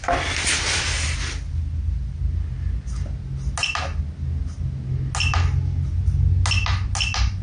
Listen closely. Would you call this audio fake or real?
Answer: real